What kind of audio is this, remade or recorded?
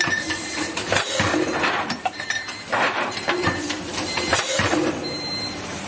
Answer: remade